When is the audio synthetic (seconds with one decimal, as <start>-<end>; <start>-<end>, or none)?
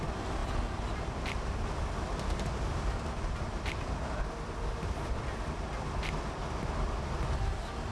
none